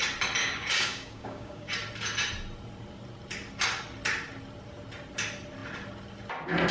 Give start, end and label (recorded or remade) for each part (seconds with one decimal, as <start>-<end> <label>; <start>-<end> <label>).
0.0-0.4 recorded; 0.4-1.7 remade; 1.7-6.7 recorded